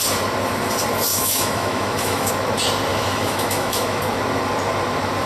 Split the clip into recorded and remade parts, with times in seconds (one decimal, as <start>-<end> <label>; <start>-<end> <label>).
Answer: 0.0-1.1 recorded; 1.1-2.3 remade; 2.3-2.9 recorded; 2.9-4.0 remade; 4.0-5.3 recorded